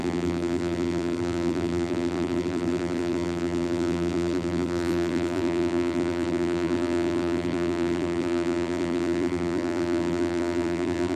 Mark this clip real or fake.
fake